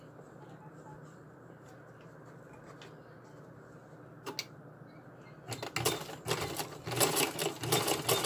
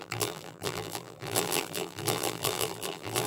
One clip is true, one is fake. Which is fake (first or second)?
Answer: second